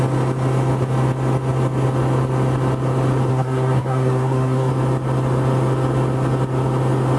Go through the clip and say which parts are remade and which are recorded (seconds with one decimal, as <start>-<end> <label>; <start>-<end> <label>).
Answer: 0.0-3.3 recorded; 3.3-4.7 remade; 4.7-7.2 recorded